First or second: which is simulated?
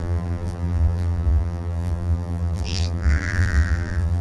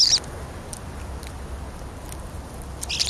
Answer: first